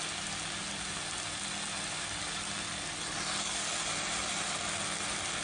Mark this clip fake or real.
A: real